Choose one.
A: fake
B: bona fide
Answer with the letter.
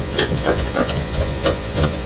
A